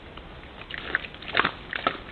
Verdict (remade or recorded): recorded